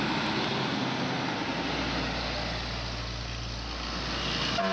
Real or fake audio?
real